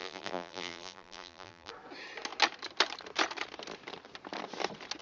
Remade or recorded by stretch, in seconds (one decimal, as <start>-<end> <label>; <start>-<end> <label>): 0.0-1.7 remade; 1.7-5.0 recorded